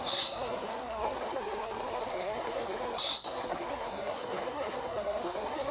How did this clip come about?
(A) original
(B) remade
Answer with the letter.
B